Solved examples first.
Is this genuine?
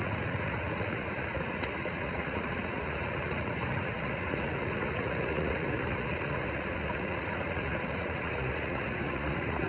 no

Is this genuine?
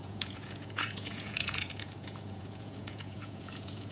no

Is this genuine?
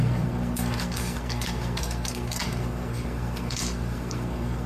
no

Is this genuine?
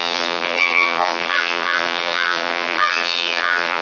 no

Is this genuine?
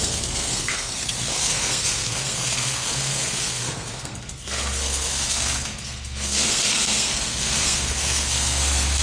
no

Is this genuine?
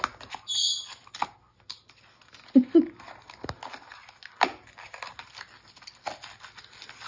yes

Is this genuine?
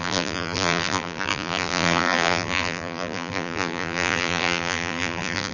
no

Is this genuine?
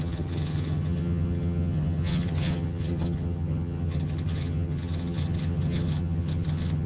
no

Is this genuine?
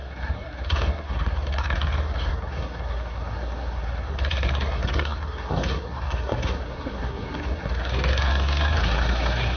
no